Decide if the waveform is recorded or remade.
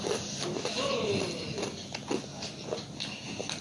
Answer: recorded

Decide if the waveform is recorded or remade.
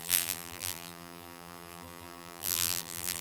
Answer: remade